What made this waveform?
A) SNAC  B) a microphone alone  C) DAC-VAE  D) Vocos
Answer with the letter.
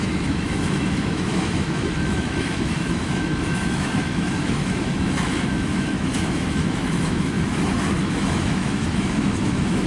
C